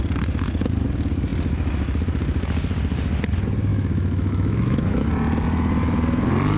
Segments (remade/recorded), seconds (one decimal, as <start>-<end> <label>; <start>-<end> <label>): 0.0-3.7 recorded; 3.7-5.1 remade; 5.1-6.6 recorded